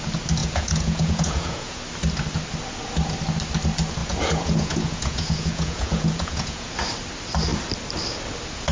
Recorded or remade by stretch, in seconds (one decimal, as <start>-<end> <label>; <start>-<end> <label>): 0.0-0.4 recorded; 0.4-1.8 remade; 1.8-4.0 recorded; 4.0-6.7 remade; 6.7-8.7 recorded